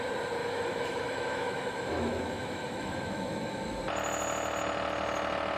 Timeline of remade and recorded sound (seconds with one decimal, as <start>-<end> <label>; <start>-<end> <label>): 0.0-0.4 recorded; 0.4-3.8 remade; 3.8-5.6 recorded